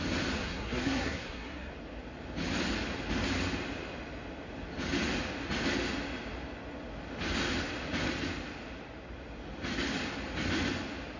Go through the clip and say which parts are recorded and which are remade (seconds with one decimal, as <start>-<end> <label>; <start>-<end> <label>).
0.0-0.4 recorded; 0.4-1.7 remade; 1.7-11.2 recorded